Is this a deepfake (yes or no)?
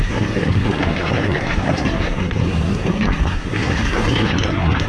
yes